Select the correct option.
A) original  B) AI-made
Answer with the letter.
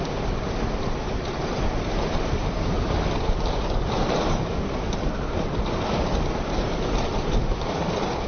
B